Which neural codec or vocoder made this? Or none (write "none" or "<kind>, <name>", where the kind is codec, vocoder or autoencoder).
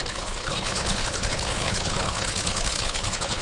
codec, HILCodec